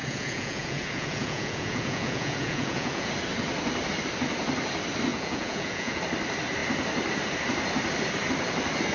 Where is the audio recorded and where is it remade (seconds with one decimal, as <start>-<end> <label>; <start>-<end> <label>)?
0.0-3.1 remade; 3.1-5.1 recorded; 5.1-6.0 remade; 6.0-8.9 recorded